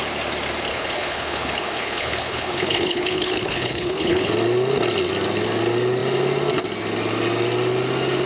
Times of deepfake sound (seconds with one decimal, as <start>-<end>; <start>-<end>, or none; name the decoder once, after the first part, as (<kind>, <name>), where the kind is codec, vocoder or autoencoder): 0.7-4.3 (codec, HILCodec)